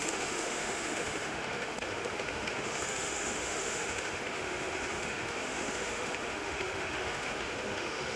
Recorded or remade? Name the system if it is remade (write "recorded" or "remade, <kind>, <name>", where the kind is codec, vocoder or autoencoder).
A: remade, autoencoder, DAC-VAE